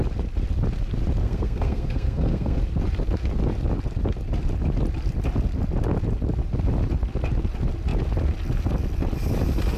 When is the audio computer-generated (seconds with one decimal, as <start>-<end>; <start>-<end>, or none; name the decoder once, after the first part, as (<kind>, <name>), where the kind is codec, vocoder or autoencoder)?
1.2-2.6 (codec, SNAC)